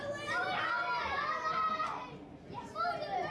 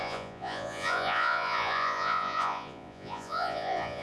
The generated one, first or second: second